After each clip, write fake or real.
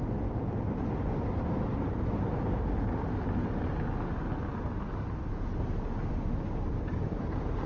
real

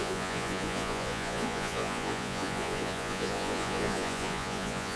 fake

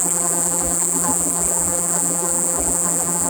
fake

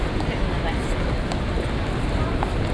real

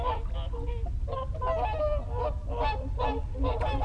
real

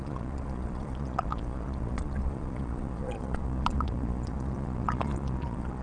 fake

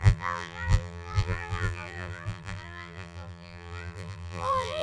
fake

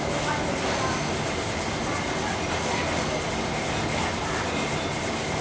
real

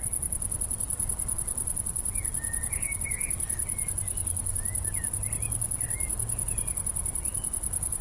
real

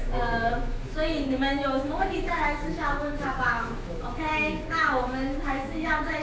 fake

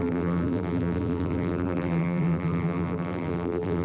fake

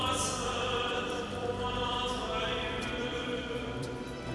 fake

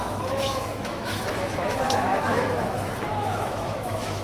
fake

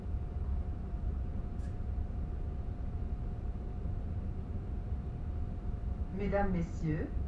fake